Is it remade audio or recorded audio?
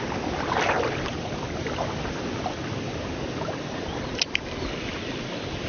recorded